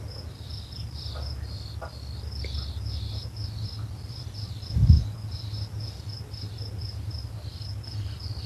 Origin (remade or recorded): recorded